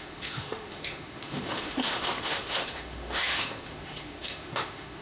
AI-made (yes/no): yes